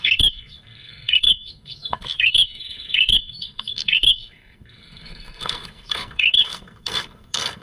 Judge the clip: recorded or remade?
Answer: remade